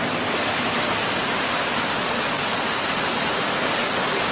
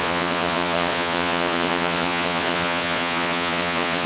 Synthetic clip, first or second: second